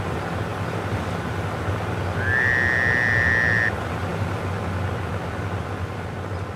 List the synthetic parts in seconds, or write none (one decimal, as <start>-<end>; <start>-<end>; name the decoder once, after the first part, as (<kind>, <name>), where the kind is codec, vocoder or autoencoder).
none